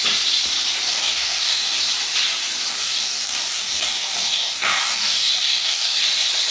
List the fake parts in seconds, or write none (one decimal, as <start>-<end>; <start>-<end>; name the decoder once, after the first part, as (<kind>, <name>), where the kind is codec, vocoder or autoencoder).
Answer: 0.9-1.8 (codec, DAC); 2.7-6.0